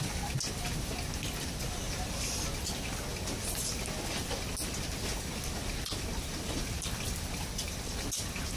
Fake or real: real